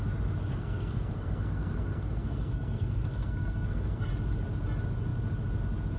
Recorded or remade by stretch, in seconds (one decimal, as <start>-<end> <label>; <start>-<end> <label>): 0.0-0.5 recorded; 0.5-4.1 remade; 4.1-6.0 recorded